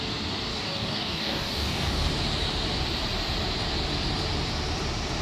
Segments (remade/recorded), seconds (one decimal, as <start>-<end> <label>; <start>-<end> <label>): 0.0-0.5 recorded; 0.5-2.1 remade; 2.1-5.2 recorded